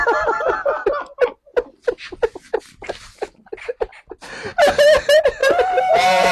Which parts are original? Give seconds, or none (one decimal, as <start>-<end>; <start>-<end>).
0.0-1.5; 2.9-5.4